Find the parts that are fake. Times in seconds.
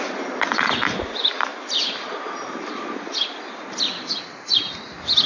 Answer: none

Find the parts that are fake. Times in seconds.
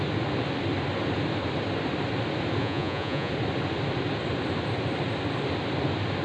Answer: 2.6-3.3 (vocoder, Vocos)